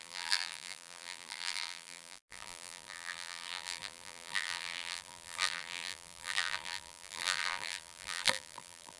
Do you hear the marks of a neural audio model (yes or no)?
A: yes